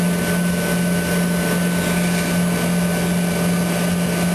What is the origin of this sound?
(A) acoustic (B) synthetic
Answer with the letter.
A